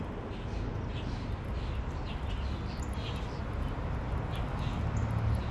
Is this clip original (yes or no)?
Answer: yes